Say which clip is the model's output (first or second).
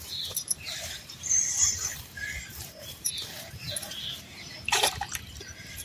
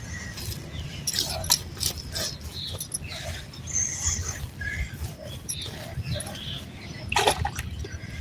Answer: first